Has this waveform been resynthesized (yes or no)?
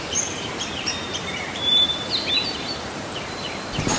yes